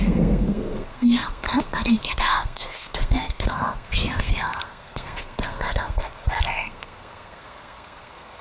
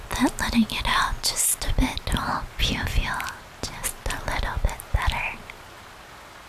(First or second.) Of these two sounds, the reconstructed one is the first